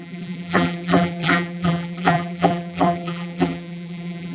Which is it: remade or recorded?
remade